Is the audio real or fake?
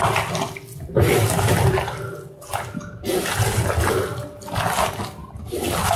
real